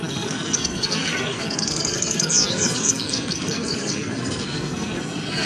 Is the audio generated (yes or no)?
yes